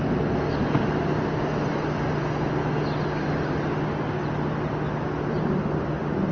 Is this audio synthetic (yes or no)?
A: no